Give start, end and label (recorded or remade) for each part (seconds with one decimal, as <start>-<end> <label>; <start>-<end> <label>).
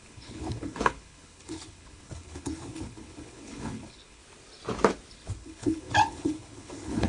0.0-4.2 remade; 4.2-5.1 recorded; 5.1-7.1 remade